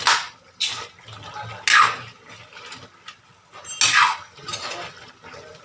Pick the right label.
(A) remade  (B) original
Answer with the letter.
B